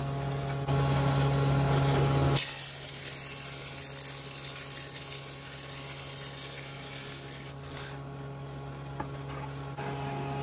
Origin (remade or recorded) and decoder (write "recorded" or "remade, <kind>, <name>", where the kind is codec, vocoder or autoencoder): recorded